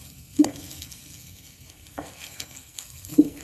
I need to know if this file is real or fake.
fake